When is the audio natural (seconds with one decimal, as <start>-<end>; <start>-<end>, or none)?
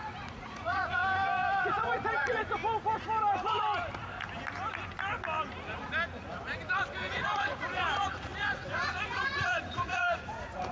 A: 1.0-1.6; 2.6-7.1